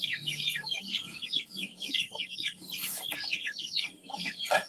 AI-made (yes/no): yes